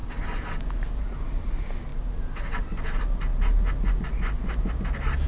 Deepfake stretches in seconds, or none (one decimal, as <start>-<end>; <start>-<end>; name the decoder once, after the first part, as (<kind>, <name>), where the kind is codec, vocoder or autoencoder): none